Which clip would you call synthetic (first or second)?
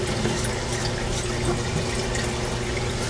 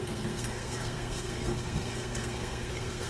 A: second